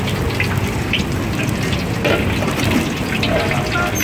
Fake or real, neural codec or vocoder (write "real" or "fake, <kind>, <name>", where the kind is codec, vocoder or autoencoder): real